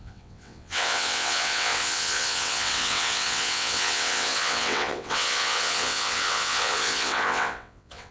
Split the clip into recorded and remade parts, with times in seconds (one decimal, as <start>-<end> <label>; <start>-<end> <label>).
0.0-8.1 remade

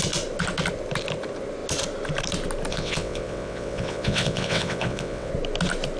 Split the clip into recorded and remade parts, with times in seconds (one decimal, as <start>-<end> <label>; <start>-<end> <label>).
0.0-2.7 recorded; 2.7-5.3 remade; 5.3-6.0 recorded

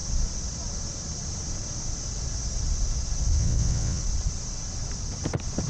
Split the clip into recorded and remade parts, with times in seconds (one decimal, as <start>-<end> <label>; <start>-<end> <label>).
0.0-3.4 recorded; 3.4-4.0 remade; 4.0-5.7 recorded

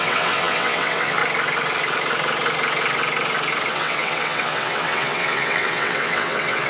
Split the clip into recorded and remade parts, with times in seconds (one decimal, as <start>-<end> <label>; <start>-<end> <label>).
0.0-1.2 remade; 1.2-3.7 recorded; 3.7-6.7 remade

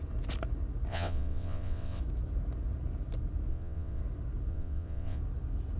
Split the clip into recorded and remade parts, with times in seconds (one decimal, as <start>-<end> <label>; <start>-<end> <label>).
0.0-0.9 recorded; 0.9-2.0 remade; 2.0-3.5 recorded; 3.5-4.0 remade; 4.0-4.5 recorded; 4.5-5.2 remade; 5.2-5.8 recorded

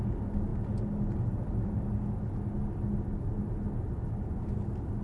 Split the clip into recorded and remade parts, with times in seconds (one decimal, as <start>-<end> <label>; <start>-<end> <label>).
0.0-5.0 recorded

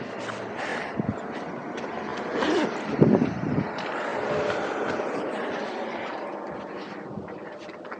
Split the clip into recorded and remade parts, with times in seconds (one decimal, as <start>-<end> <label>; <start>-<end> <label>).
0.0-8.0 recorded

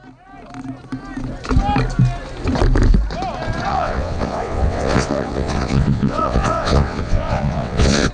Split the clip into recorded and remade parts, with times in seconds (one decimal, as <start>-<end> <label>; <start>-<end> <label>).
0.0-3.7 recorded; 3.7-8.1 remade